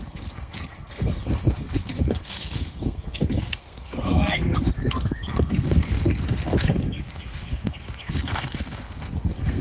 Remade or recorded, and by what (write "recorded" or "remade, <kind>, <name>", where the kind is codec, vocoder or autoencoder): remade, codec, SNAC